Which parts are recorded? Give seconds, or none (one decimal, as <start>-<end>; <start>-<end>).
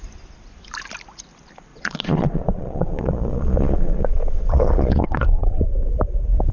0.0-1.7; 5.6-6.5